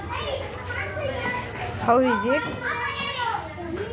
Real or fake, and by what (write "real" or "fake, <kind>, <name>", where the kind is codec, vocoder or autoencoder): real